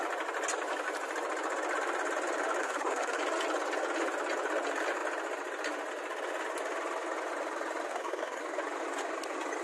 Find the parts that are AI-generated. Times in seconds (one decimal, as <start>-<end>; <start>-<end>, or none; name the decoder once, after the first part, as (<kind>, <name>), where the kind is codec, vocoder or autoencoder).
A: 2.6-3.2 (codec, SNAC); 7.9-8.4